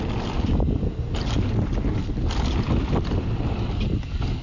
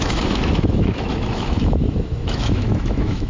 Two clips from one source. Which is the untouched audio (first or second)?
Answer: first